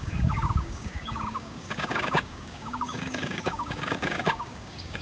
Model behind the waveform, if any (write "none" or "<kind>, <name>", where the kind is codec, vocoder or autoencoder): codec, DAC